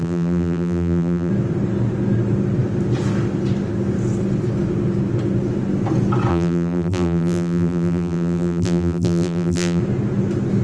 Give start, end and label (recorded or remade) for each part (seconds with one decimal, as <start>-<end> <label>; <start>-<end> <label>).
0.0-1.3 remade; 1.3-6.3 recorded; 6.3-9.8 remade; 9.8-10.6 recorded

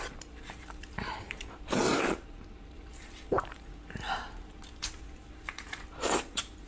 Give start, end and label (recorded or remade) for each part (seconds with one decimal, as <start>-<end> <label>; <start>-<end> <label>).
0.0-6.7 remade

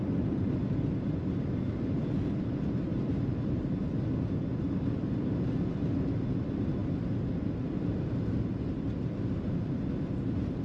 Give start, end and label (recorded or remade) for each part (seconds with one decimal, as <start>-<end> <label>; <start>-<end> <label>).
0.0-2.9 recorded; 2.9-4.0 remade; 4.0-10.6 recorded

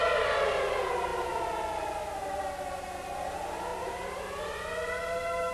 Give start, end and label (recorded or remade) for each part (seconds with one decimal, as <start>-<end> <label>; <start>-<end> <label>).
0.0-3.7 recorded; 3.7-4.4 remade; 4.4-5.5 recorded

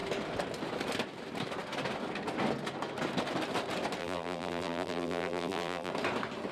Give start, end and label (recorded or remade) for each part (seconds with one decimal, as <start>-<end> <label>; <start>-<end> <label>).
0.0-4.0 recorded; 4.0-5.9 remade; 5.9-6.5 recorded